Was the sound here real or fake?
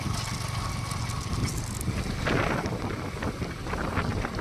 real